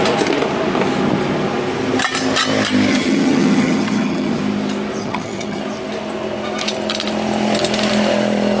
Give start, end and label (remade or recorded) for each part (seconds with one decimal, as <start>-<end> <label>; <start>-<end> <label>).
0.0-2.9 recorded; 2.9-4.4 remade; 4.4-5.0 recorded; 5.0-5.6 remade; 5.6-8.6 recorded

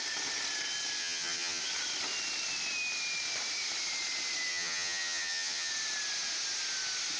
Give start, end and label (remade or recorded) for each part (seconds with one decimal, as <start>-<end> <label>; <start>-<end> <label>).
0.0-1.0 recorded; 1.0-1.6 remade; 1.6-4.5 recorded; 4.5-5.7 remade; 5.7-7.2 recorded

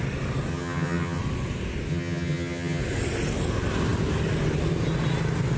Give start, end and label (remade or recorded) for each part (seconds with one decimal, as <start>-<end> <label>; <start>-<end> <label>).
0.0-0.5 recorded; 0.5-1.2 remade; 1.2-1.9 recorded; 1.9-2.8 remade; 2.8-5.6 recorded

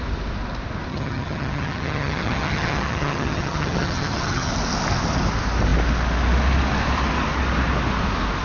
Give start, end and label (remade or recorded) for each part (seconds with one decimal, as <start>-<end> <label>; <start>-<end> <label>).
0.0-0.9 recorded; 0.9-4.5 remade; 4.5-8.4 recorded

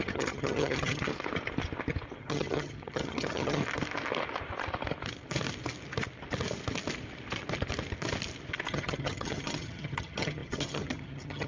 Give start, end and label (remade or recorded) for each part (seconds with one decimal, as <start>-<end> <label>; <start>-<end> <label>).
0.0-1.1 remade; 1.1-2.2 recorded; 2.2-3.6 remade; 3.6-8.7 recorded; 8.7-11.5 remade